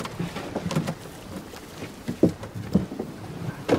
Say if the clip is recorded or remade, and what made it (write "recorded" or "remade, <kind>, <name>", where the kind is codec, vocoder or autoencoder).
recorded